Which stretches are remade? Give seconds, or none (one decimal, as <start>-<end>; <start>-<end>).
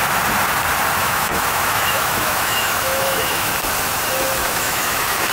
1.0-3.5; 4.4-5.3